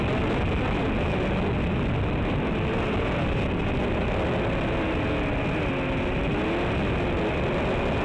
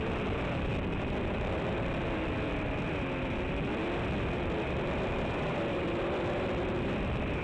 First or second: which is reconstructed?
second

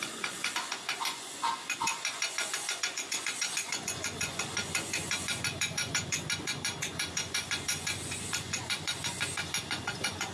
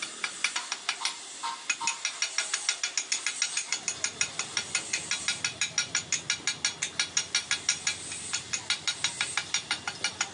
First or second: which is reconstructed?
first